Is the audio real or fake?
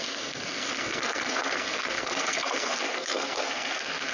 fake